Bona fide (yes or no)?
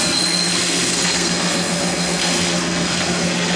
no